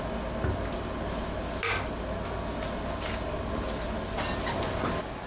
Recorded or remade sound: recorded